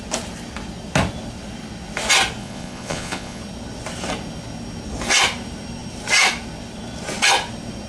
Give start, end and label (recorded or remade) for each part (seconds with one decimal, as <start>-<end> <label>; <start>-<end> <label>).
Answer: 0.0-2.4 recorded; 2.4-3.4 remade; 3.4-7.9 recorded